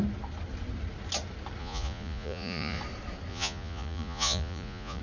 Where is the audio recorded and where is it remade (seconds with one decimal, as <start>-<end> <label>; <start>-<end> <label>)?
0.0-1.6 recorded; 1.6-2.8 remade; 2.8-3.3 recorded; 3.3-5.0 remade